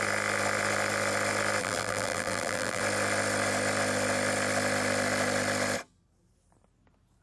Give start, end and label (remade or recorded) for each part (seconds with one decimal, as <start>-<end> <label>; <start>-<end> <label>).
0.0-1.6 recorded; 1.6-2.8 remade; 2.8-7.2 recorded